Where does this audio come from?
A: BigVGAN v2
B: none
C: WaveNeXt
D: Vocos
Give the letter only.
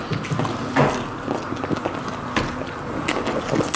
B